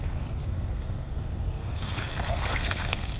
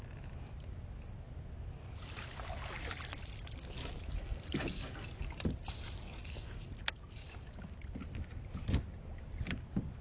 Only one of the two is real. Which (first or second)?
second